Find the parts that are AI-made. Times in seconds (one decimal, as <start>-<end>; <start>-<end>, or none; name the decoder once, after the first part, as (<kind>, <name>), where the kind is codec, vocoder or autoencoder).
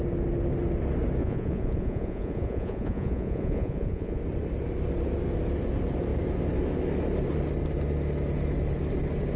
1.2-4.2 (vocoder, Vocos)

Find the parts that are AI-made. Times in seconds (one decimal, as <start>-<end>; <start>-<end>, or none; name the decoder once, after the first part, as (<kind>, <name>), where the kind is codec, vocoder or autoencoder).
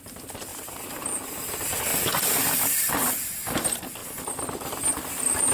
0.5-1.0 (vocoder, BigVGAN v2); 1.9-3.3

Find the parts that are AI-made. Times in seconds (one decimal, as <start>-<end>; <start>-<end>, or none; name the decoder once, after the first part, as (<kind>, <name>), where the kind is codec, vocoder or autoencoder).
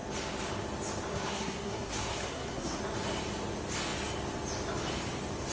1.1-2.8 (codec, SNAC)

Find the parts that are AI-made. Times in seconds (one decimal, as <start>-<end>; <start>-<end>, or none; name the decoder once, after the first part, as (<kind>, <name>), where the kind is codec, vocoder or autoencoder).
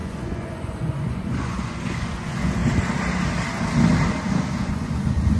0.0-2.6 (vocoder, Vocos); 4.6-5.4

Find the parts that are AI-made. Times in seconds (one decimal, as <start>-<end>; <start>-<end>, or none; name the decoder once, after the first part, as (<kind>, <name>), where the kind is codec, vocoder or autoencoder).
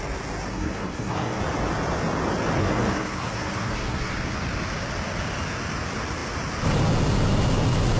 0.5-1.4 (codec, SNAC); 2.6-4.1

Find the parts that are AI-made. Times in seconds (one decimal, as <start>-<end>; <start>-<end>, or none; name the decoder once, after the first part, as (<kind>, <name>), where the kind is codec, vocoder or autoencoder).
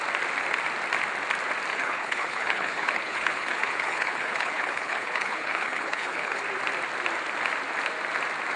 1.7-6.4 (codec, HILCodec)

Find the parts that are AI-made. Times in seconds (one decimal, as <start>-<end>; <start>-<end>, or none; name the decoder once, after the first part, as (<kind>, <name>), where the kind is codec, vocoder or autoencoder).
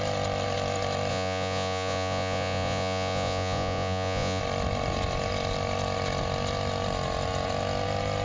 1.1-4.4 (vocoder, Vocos)